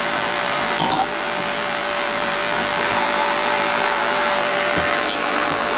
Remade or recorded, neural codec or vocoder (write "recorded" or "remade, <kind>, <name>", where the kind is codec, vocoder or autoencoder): remade, vocoder, BigVGAN v2